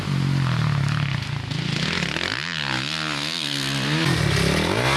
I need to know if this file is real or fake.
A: real